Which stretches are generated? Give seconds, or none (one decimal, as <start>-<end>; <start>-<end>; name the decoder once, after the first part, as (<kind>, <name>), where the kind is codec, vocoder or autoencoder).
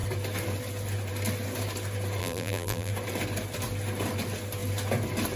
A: 2.2-2.9 (vocoder, BigVGAN v2)